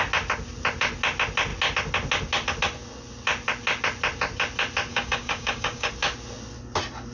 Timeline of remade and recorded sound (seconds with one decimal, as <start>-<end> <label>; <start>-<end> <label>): 0.0-4.9 recorded; 4.9-5.9 remade; 5.9-7.1 recorded